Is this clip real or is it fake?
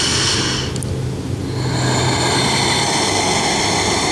fake